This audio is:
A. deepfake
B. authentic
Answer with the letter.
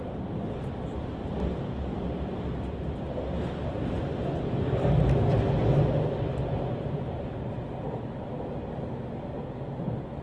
B